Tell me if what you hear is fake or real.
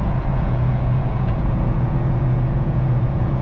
fake